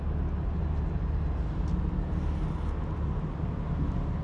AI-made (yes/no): no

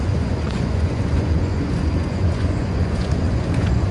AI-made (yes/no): yes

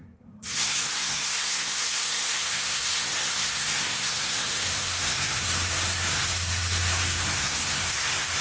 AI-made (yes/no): yes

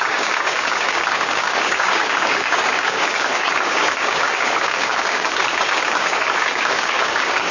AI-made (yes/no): yes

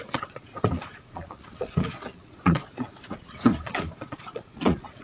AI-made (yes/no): yes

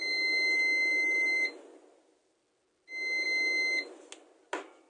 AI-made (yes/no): no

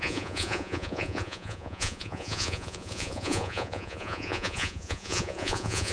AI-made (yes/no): yes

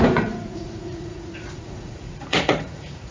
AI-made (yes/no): yes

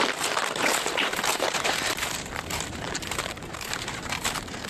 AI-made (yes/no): yes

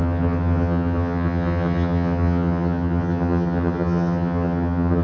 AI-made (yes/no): yes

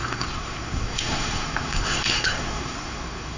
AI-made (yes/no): yes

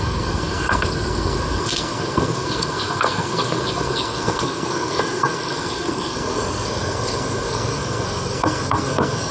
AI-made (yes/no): yes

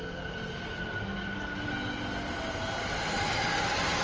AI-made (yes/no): no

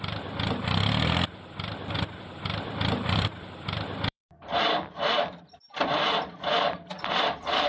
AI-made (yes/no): yes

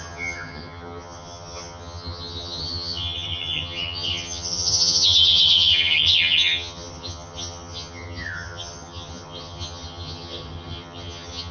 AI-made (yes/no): yes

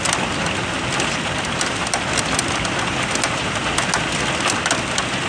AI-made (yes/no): no